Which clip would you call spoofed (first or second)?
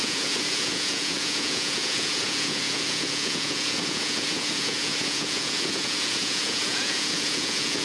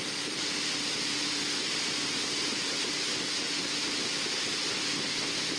first